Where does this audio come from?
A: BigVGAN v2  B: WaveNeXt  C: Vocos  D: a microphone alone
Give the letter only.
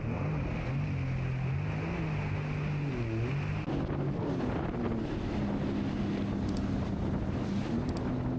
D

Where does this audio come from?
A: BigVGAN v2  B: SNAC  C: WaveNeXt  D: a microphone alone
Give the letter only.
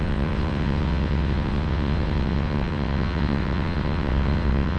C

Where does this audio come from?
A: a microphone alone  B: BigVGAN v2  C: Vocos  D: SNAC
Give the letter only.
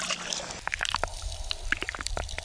A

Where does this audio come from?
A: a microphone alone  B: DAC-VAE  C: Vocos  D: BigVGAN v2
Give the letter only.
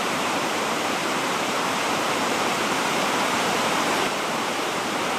D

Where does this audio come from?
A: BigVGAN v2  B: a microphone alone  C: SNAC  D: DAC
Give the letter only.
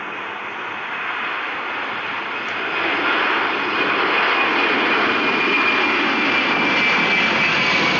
B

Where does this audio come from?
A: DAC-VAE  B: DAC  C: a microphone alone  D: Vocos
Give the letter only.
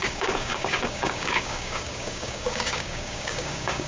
B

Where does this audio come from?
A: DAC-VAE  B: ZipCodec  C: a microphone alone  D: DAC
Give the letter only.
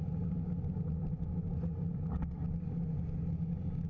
C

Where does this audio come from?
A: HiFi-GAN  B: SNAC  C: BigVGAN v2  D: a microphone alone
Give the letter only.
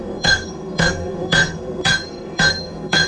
B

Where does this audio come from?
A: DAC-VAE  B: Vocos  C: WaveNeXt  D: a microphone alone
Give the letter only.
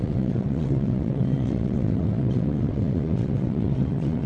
C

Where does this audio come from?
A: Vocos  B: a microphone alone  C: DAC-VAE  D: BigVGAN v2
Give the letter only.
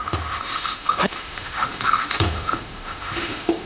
C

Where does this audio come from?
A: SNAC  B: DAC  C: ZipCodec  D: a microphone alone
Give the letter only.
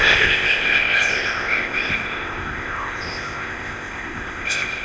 C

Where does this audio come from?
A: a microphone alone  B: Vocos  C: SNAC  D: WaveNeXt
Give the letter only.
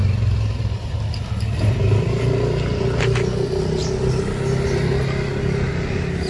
A